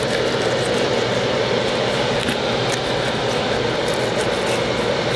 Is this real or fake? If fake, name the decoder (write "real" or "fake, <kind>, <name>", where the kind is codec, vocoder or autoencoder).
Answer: real